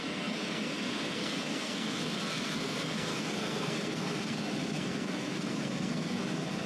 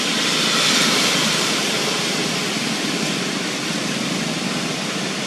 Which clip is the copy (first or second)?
first